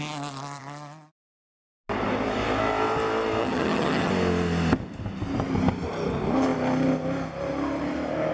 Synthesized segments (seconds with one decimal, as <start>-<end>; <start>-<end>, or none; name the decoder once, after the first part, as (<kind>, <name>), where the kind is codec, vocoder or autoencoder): 3.4-4.1 (vocoder, HiFi-GAN)